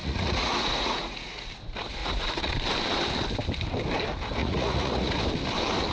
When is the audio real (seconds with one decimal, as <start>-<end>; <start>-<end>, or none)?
1.5-2.0; 2.5-4.4; 5.2-5.9